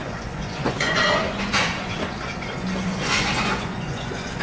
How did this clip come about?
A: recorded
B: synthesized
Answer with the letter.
B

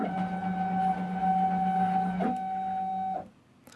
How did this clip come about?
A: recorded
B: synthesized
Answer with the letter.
A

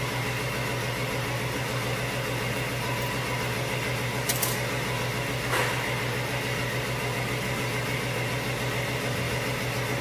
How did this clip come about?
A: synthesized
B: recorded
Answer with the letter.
B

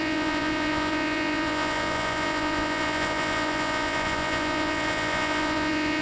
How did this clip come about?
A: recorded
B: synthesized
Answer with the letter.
B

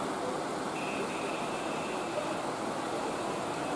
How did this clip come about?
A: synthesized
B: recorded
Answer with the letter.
B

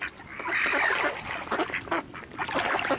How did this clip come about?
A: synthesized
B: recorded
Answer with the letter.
B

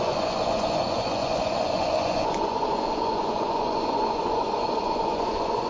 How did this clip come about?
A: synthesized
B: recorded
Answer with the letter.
A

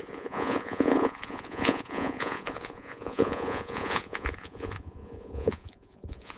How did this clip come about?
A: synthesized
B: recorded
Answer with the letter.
A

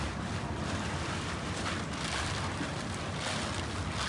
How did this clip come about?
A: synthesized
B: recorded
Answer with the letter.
B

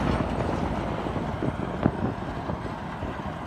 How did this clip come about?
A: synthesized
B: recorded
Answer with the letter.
B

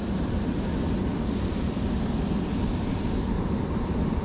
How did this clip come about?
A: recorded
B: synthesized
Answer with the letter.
A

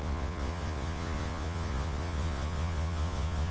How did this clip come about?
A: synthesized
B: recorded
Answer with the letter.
A